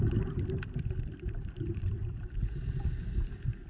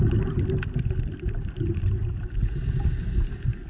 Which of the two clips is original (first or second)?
second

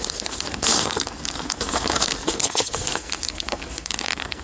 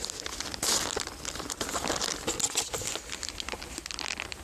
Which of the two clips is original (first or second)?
second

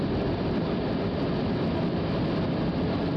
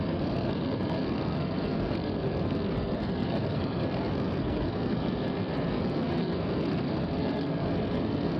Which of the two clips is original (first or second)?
first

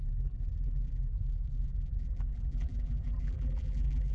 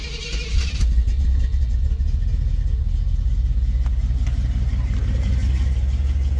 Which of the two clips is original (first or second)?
second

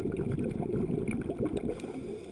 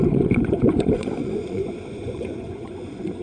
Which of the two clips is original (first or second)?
first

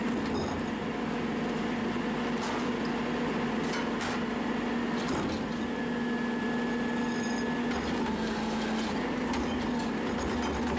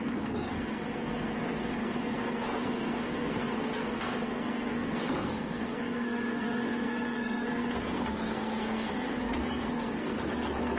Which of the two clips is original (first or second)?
first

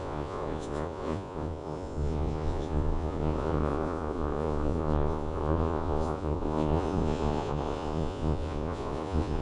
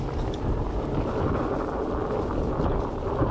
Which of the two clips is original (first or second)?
second